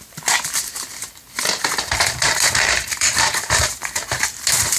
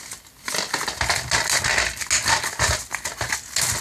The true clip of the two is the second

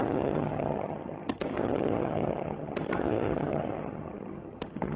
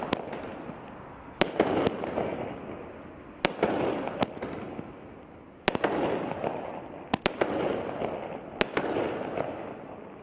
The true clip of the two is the second